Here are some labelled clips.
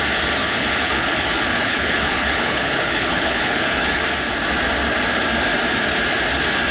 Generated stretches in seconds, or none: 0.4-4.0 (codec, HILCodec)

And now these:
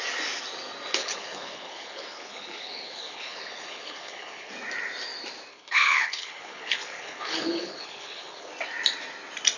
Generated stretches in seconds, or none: 1.0-4.5 (codec, HILCodec); 5.5-8.5

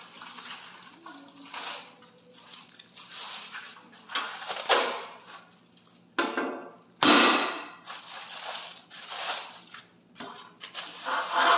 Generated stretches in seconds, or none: none